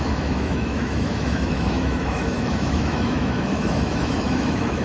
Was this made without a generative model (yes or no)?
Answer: no